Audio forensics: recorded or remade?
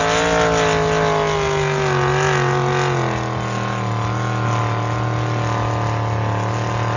recorded